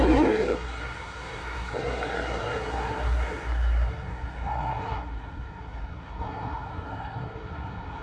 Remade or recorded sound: remade